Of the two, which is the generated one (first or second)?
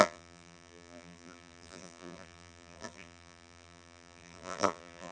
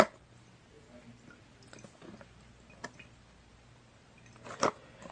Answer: first